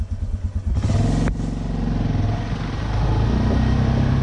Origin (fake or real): real